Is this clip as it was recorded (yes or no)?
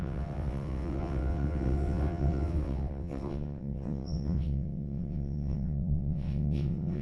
no